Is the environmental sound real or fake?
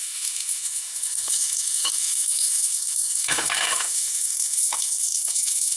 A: fake